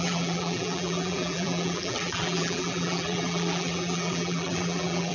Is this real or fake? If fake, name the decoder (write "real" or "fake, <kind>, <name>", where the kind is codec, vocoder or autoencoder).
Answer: fake, vocoder, BigVGAN v2